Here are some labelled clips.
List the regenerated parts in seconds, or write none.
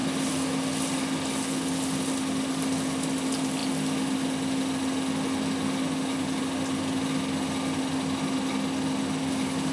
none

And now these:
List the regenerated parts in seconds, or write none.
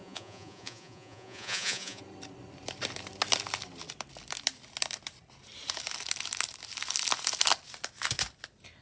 0.0-2.0 (vocoder, Vocos)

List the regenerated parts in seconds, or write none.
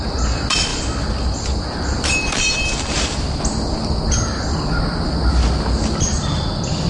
none